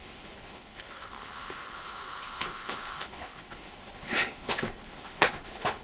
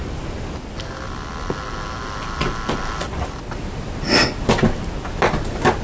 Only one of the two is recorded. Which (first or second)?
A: second